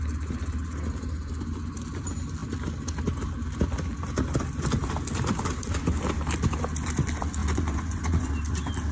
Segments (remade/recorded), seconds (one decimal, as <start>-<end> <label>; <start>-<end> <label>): 0.0-7.4 recorded; 7.4-8.3 remade; 8.3-8.9 recorded